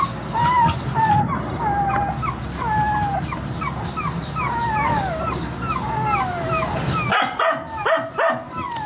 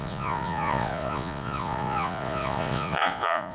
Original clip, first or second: first